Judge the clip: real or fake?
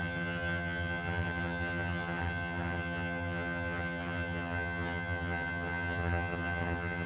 fake